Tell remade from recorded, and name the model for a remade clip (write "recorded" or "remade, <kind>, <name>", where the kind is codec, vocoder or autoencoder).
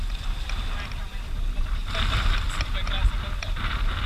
recorded